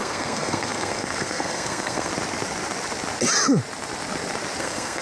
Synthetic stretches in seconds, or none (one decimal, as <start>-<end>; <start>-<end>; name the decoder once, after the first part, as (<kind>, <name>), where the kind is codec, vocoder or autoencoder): 0.0-2.1 (codec, SNAC); 4.6-5.0

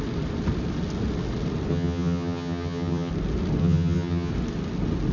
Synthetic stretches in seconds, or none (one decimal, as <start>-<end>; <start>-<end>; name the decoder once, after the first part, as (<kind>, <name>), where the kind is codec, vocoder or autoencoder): 1.7-3.1 (vocoder, HiFi-GAN); 3.6-4.3

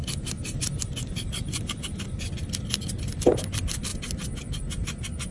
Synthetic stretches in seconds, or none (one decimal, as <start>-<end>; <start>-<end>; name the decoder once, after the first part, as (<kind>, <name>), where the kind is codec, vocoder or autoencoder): none

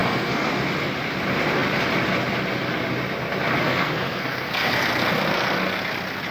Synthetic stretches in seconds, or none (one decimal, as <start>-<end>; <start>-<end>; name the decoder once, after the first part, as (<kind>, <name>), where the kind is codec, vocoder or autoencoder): 0.0-0.5 (codec, SNAC); 3.6-5.8

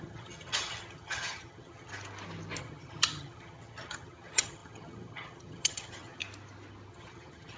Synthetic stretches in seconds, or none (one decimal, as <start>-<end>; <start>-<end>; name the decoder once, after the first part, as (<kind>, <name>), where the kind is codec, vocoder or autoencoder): 0.0-1.9 (vocoder, HiFi-GAN); 2.6-6.2; 6.9-7.6

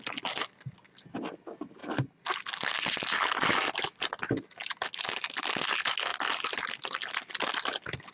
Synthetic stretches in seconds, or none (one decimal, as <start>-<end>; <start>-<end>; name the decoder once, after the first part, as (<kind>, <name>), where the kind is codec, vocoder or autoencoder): none

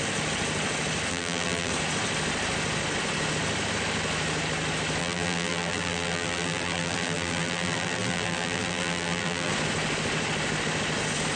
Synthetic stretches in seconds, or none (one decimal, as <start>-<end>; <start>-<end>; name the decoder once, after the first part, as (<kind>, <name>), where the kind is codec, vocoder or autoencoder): 1.1-1.7 (vocoder, BigVGAN v2); 5.0-9.5

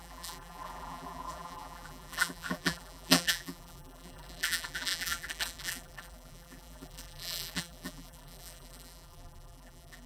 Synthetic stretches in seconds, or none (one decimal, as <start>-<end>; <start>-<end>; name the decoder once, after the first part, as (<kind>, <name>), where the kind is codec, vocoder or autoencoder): 0.0-10.1 (vocoder, BigVGAN v2)